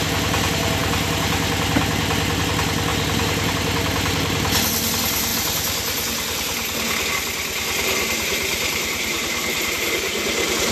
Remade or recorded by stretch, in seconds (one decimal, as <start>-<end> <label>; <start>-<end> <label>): 0.0-2.9 recorded; 2.9-3.5 remade; 3.5-8.5 recorded; 8.5-10.0 remade; 10.0-10.7 recorded